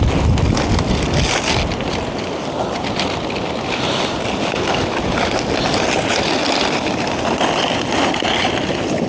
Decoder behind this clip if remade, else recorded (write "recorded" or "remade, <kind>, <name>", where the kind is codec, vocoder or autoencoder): recorded